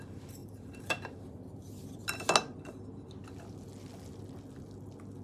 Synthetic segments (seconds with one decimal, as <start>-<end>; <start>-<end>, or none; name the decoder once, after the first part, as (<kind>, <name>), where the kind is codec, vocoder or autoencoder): none